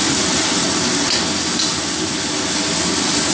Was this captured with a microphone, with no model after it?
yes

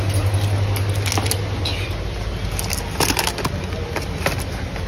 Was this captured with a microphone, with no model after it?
yes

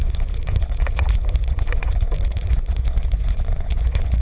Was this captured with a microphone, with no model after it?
no